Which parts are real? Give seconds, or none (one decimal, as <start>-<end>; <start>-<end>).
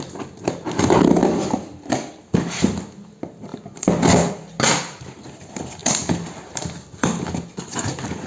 0.0-8.3